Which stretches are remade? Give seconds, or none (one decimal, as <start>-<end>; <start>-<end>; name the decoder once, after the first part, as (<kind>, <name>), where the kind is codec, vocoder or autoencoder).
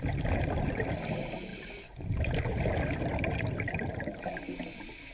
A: none